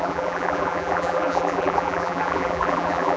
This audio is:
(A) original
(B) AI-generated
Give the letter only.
B